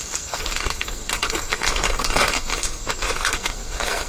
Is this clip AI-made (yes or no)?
yes